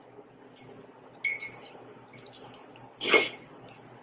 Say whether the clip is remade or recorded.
recorded